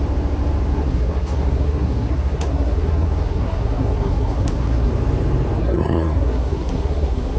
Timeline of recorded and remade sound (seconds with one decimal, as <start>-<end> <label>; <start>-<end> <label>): 0.0-0.7 recorded; 0.7-4.9 remade; 4.9-5.6 recorded; 5.6-7.4 remade